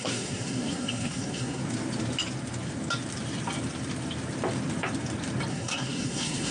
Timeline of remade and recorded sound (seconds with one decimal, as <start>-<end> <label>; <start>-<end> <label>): 0.0-1.6 remade; 1.6-5.5 recorded; 5.5-6.5 remade